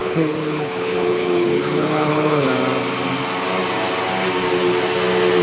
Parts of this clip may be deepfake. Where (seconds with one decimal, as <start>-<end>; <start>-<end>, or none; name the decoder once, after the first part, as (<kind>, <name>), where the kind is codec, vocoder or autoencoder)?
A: 0.0-2.5 (codec, HILCodec)